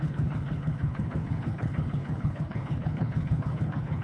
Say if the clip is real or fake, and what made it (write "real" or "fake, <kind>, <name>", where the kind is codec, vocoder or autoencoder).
fake, codec, HILCodec